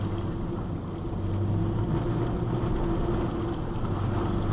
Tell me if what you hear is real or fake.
real